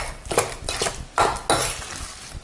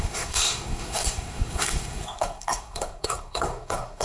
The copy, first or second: second